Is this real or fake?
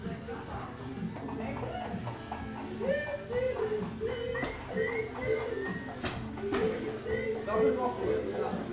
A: real